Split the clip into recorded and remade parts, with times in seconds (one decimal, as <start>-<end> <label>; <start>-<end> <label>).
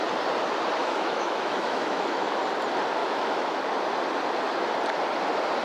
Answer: 0.0-0.8 recorded; 0.8-2.4 remade; 2.4-3.0 recorded; 3.0-3.7 remade; 3.7-5.6 recorded